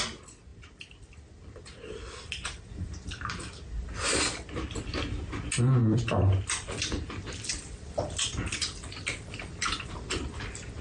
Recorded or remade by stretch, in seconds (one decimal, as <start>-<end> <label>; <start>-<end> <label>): 0.0-0.5 recorded; 0.5-4.2 remade; 4.2-5.8 recorded; 5.8-9.5 remade; 9.5-10.8 recorded

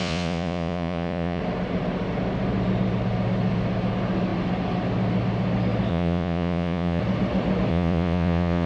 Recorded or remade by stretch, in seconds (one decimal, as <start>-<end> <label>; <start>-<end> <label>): 0.0-1.4 remade; 1.4-5.9 recorded; 5.9-7.0 remade; 7.0-7.7 recorded; 7.7-8.7 remade

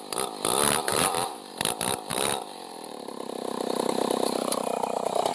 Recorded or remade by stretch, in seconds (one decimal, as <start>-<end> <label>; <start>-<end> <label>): 0.0-0.9 recorded; 0.9-1.5 remade; 1.5-2.1 recorded; 2.1-5.3 remade

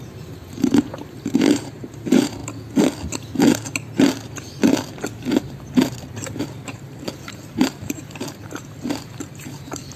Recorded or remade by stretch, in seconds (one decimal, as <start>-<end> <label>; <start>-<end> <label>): 0.0-2.4 remade; 2.4-5.4 recorded; 5.4-10.0 remade